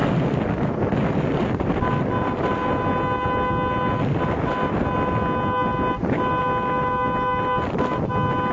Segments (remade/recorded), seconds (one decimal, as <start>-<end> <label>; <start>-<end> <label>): 0.0-8.5 recorded